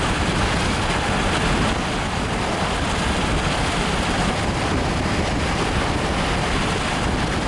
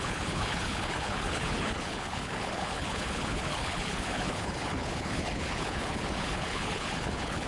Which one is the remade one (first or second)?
second